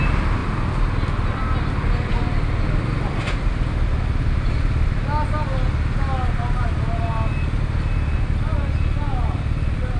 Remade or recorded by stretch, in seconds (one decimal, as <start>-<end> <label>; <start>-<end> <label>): 0.0-10.0 recorded